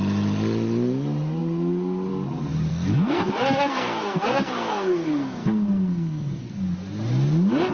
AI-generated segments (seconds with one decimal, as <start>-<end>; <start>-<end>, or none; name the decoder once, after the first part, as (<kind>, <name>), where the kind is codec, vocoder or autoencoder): 2.7-6.6 (codec, SNAC)